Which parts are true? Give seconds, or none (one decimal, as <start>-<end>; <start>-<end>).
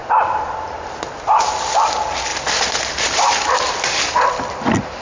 0.0-5.0